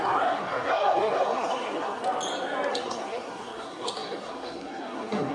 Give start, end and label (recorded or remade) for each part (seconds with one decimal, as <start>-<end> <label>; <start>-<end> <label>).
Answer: 0.0-2.0 remade; 2.0-2.7 recorded; 2.7-5.3 remade